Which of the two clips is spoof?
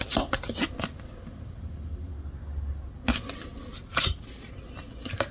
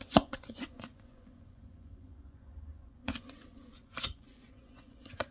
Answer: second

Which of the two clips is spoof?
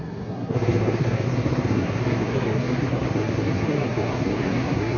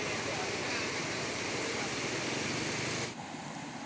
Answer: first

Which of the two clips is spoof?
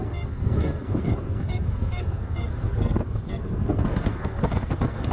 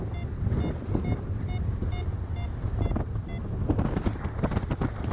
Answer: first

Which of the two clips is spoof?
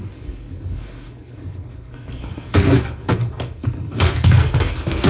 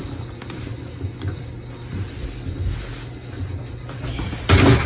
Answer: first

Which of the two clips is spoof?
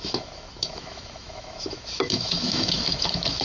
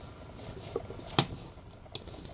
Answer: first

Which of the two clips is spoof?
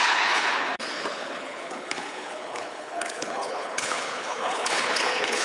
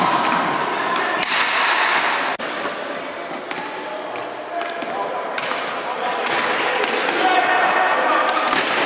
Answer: first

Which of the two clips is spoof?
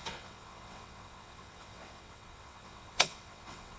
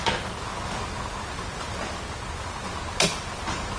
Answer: first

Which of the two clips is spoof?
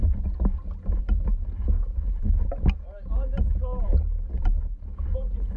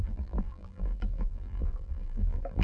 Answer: second